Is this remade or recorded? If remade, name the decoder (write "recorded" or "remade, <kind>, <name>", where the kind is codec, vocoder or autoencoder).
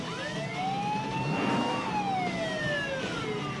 recorded